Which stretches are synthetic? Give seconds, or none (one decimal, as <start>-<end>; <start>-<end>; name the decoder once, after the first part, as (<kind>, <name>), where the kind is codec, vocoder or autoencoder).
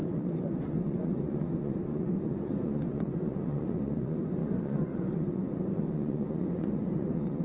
0.0-7.4 (vocoder, Vocos)